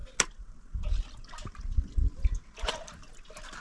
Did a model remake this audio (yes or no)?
no